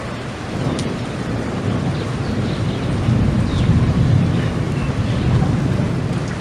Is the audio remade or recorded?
recorded